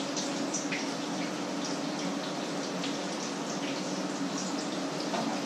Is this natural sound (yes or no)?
yes